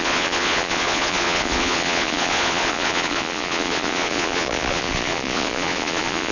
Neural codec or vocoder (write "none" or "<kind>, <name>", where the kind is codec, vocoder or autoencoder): vocoder, Vocos